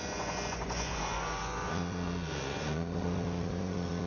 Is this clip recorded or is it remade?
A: remade